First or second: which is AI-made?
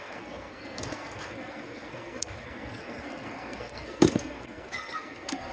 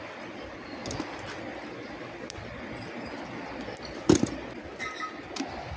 first